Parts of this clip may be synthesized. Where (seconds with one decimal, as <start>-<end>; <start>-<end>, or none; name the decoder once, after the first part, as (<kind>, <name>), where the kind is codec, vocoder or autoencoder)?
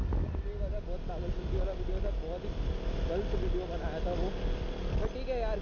none